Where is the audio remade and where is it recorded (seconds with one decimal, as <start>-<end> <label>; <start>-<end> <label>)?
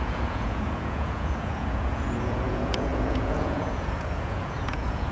0.0-5.1 remade